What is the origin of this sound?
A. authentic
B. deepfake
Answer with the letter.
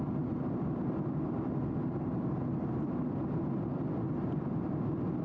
A